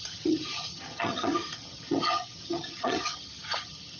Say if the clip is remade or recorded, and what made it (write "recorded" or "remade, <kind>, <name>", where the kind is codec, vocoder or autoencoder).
remade, vocoder, HiFi-GAN